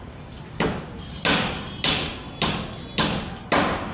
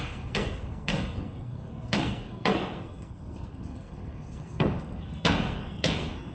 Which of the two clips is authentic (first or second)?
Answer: first